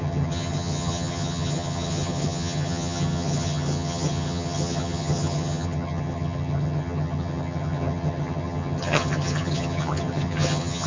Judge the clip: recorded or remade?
remade